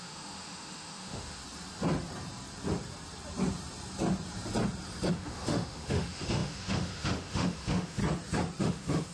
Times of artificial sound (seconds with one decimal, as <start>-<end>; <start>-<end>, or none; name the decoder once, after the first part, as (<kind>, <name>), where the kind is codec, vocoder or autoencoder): 0.0-1.4 (autoencoder, DAC-VAE); 5.1-8.0; 8.6-9.1